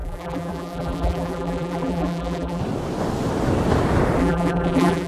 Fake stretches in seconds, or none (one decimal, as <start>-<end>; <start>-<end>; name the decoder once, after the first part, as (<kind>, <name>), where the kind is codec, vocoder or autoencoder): 0.0-2.6 (vocoder, BigVGAN v2); 4.2-5.1